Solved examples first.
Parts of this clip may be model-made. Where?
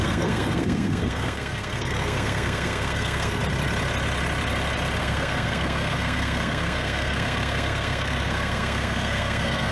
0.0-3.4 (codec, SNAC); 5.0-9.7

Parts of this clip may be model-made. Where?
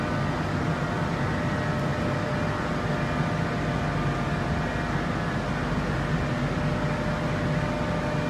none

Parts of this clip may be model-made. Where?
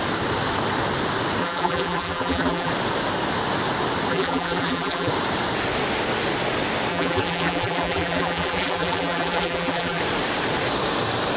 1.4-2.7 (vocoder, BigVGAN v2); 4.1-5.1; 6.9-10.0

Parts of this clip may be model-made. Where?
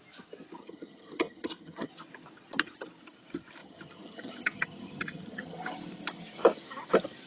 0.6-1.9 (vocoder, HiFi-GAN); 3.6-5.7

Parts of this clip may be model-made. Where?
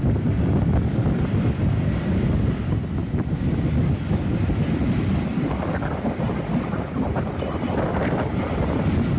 none